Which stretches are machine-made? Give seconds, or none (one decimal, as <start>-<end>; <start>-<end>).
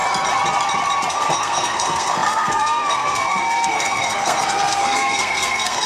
1.1-5.9